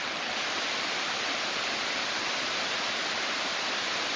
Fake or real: fake